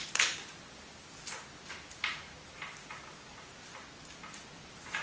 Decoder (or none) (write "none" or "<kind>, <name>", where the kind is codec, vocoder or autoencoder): none